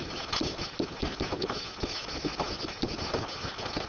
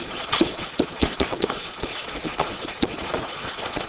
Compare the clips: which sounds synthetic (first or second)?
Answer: second